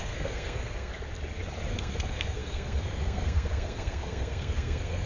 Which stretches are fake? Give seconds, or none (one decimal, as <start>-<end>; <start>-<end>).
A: 0.0-0.9; 1.7-5.1